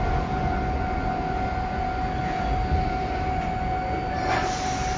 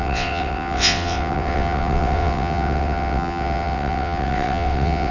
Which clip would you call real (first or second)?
first